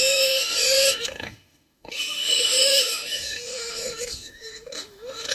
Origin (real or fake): fake